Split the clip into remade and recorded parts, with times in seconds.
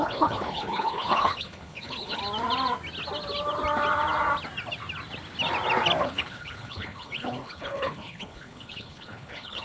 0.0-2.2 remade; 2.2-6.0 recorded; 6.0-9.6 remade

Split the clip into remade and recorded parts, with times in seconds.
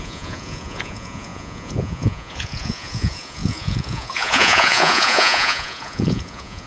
0.0-6.7 remade